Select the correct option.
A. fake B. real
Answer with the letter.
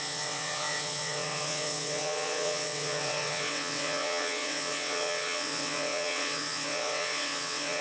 A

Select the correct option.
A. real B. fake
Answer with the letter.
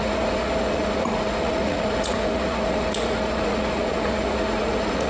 B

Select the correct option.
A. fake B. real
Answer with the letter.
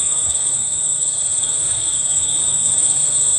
A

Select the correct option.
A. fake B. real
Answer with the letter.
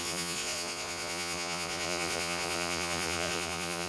A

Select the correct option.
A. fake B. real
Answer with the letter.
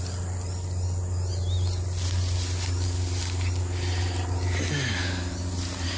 B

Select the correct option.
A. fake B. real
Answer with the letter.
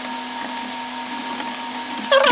B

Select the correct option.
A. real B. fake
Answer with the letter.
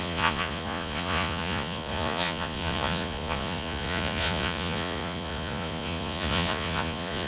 B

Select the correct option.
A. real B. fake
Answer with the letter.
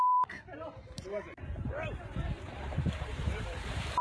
B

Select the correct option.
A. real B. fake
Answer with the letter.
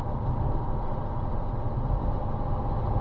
A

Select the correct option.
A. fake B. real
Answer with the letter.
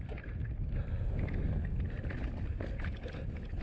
B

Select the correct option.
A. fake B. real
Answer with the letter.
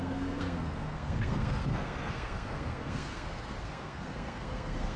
A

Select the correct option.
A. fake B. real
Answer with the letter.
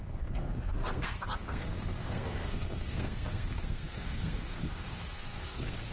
A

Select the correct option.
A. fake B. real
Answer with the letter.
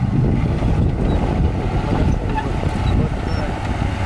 B